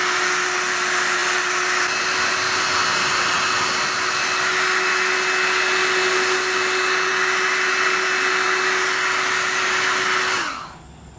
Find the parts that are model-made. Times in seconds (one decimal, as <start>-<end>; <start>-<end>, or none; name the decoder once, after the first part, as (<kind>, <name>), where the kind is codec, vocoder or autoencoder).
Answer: none